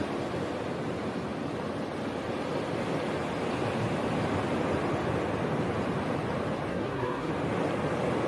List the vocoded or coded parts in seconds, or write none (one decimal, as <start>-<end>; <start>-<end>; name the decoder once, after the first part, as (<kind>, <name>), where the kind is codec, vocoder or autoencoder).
6.7-7.3 (codec, SNAC)